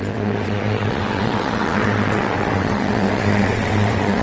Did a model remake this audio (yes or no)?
yes